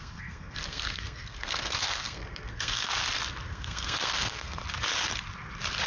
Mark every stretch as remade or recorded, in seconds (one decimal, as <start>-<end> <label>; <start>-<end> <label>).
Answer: 0.0-3.0 remade; 3.0-3.5 recorded; 3.5-4.6 remade; 4.6-5.9 recorded